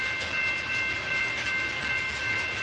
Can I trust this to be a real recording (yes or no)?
yes